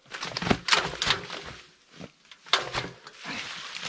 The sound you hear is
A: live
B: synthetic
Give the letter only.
A